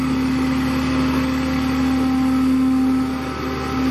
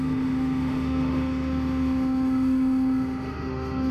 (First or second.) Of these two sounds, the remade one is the second